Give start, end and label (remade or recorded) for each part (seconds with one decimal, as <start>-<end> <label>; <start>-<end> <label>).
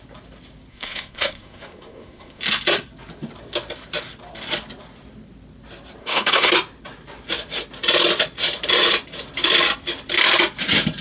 0.0-0.7 recorded; 0.7-2.4 remade; 2.4-6.0 recorded; 6.0-6.5 remade; 6.5-11.0 recorded